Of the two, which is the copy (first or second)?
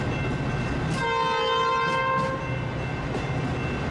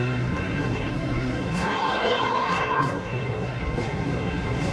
second